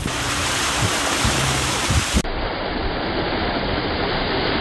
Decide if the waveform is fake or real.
fake